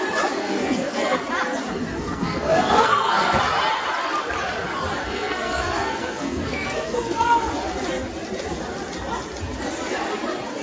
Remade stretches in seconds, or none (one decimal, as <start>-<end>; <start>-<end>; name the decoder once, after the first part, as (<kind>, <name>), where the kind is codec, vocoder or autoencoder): 0.4-1.2 (codec, SNAC); 1.9-3.4; 5.0-7.5